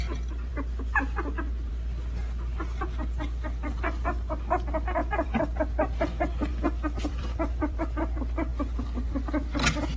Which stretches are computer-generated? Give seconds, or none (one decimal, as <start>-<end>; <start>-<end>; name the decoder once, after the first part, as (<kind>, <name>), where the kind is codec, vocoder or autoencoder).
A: 5.0-5.6 (vocoder, BigVGAN v2); 6.5-7.8